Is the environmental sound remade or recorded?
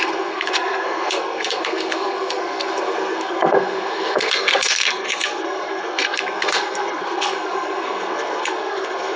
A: remade